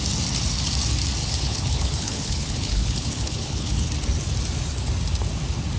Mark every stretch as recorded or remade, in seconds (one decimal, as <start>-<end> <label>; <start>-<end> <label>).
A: 0.0-1.2 recorded; 1.2-3.9 remade; 3.9-5.8 recorded